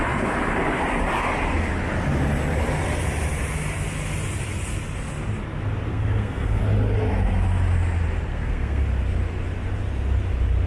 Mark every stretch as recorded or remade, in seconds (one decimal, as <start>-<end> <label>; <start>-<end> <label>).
0.0-5.9 recorded; 5.9-6.6 remade; 6.6-8.3 recorded; 8.3-8.8 remade; 8.8-10.7 recorded